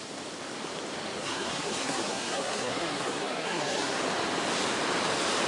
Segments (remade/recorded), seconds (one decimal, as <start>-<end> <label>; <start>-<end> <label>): 0.0-1.2 recorded; 1.2-4.0 remade; 4.0-5.5 recorded